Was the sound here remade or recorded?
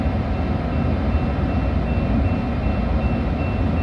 recorded